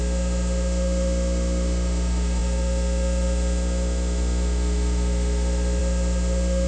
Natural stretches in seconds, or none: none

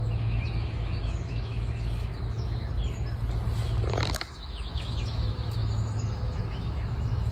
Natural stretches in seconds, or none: 2.7-4.1